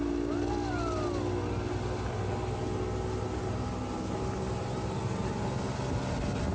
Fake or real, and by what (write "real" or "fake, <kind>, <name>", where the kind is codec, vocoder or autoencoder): real